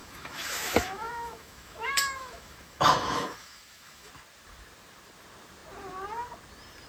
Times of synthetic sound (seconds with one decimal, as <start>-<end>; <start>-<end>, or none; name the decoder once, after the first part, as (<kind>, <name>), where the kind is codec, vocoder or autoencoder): 0.0-4.1 (autoencoder, DAC-VAE)